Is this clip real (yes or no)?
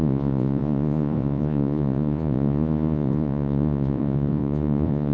no